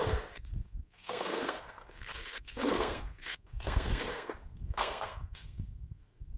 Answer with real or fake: fake